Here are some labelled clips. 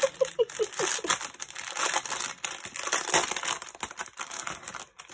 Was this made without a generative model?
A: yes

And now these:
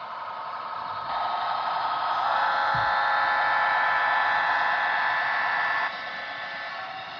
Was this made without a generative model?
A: yes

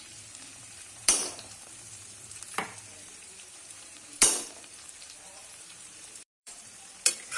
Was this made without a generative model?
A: no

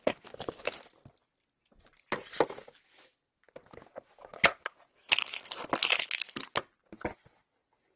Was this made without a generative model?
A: yes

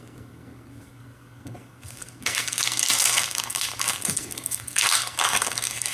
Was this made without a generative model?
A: no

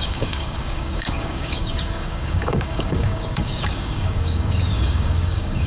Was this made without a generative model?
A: no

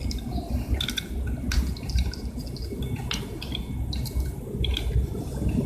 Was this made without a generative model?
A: yes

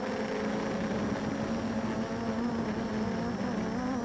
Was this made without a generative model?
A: yes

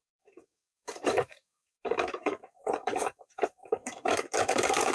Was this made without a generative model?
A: no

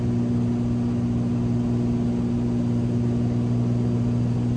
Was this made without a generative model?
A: yes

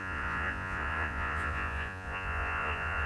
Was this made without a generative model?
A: no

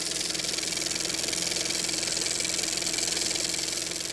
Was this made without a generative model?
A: yes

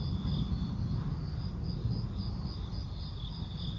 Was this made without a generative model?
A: yes